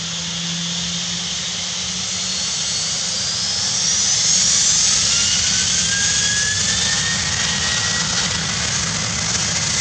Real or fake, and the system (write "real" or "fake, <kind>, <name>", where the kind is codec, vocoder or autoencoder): real